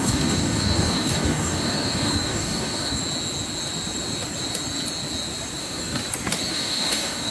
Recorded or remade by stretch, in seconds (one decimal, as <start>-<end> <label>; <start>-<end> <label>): 0.0-3.0 remade; 3.0-5.6 recorded; 5.6-6.0 remade; 6.0-6.5 recorded; 6.5-7.3 remade

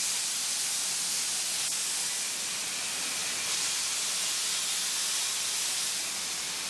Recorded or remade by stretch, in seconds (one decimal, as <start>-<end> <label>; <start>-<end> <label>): 0.0-6.7 recorded

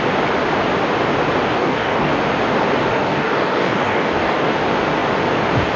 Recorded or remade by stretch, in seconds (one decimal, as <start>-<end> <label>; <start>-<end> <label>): 0.0-1.5 recorded; 1.5-2.1 remade; 2.1-2.9 recorded; 2.9-4.5 remade; 4.5-5.8 recorded

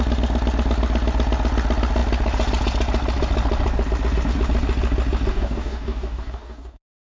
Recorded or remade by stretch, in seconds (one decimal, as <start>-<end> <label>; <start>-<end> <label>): 0.0-5.3 recorded; 5.3-7.2 remade

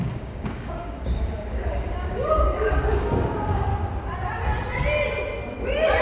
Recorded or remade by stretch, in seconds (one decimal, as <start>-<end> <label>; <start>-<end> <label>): 0.0-3.7 remade; 3.7-6.0 recorded

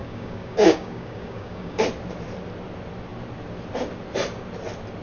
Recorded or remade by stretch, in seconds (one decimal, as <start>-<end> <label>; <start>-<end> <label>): 0.0-1.8 remade; 1.8-5.0 recorded

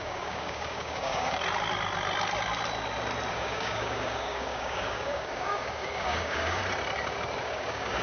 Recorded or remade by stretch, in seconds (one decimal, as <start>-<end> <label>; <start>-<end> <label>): 0.0-1.4 remade; 1.4-3.3 recorded; 3.3-6.6 remade; 6.6-7.4 recorded; 7.4-8.0 remade

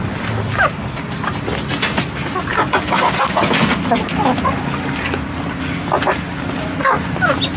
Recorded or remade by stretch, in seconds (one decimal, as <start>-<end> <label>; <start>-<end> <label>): 0.0-2.5 recorded; 2.5-3.0 remade; 3.0-7.6 recorded